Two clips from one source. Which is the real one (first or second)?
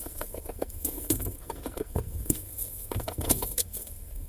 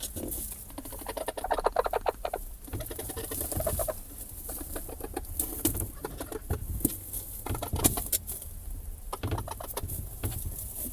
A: second